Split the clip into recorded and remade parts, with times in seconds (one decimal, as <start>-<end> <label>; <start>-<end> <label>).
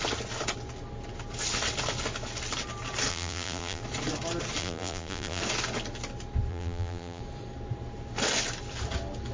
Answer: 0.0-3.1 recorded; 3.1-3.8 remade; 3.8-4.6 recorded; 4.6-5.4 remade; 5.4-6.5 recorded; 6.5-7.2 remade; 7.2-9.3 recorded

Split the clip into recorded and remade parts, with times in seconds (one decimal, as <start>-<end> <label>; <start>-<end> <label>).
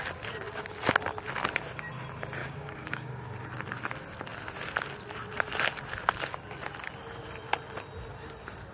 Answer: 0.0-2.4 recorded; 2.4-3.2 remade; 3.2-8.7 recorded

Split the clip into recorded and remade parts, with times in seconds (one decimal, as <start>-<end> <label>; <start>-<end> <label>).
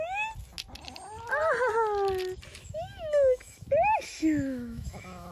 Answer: 0.0-2.5 recorded; 2.5-5.3 remade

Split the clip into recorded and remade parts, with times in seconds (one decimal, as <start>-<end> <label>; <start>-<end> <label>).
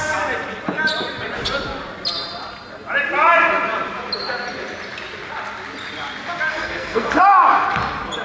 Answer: 0.0-6.5 recorded; 6.5-7.2 remade; 7.2-8.2 recorded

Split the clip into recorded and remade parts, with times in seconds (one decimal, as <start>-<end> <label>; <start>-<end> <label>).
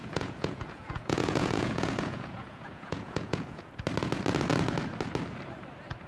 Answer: 0.0-3.7 remade; 3.7-6.1 recorded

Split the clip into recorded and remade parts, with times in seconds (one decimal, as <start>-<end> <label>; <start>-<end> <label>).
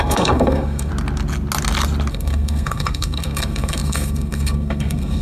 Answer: 0.0-0.9 remade; 0.9-2.1 recorded; 2.1-5.2 remade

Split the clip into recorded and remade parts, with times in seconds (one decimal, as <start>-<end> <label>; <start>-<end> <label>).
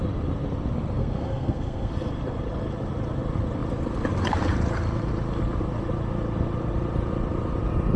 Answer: 0.0-1.0 recorded; 1.0-1.9 remade; 1.9-8.0 recorded